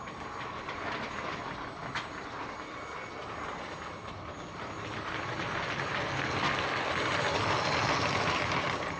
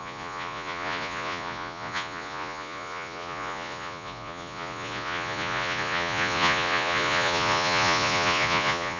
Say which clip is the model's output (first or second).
second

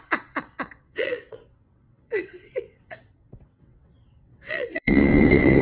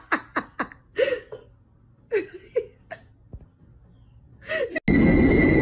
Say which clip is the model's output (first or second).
first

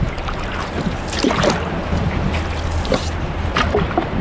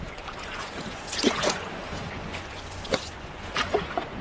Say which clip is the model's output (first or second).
second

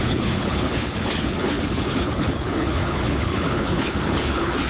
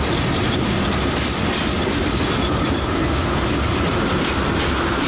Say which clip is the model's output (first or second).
first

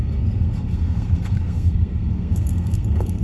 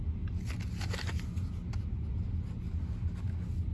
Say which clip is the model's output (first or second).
first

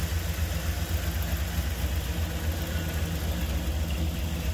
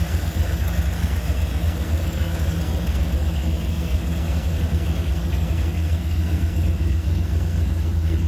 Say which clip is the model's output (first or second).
second